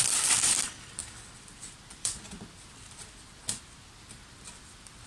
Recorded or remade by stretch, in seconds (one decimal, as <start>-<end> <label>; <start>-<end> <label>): 0.0-5.1 recorded